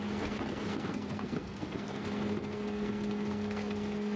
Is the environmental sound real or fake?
fake